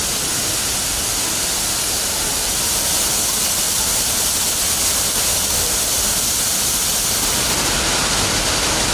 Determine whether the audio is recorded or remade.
recorded